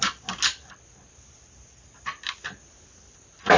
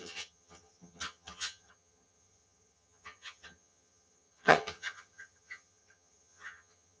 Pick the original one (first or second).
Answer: first